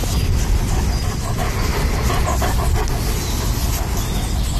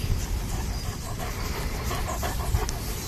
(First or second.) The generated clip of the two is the second